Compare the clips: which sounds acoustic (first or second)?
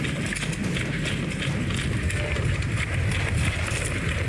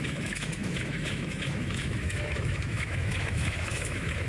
first